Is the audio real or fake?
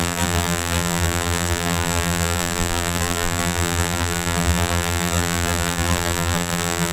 fake